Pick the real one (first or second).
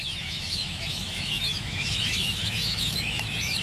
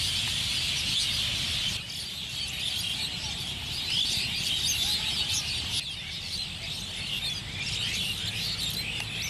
second